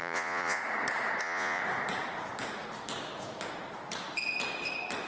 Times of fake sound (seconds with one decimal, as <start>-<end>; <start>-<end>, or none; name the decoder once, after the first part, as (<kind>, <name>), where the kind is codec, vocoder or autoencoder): 0.0-0.6 (vocoder, Vocos); 1.2-1.6